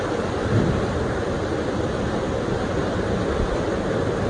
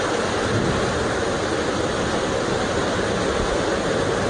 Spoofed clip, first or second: first